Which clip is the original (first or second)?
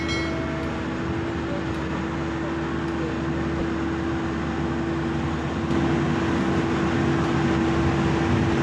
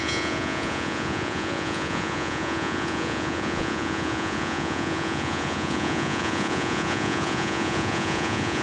first